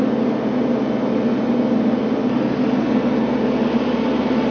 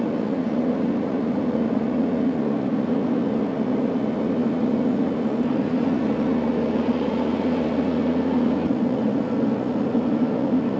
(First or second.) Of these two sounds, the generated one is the second